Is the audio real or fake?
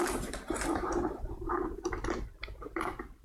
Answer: fake